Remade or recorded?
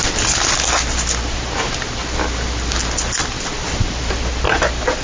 recorded